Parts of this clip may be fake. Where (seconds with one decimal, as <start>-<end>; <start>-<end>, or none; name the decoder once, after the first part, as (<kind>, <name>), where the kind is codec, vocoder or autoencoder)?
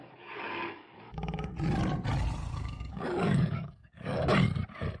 0.0-1.5 (codec, DAC); 2.5-4.3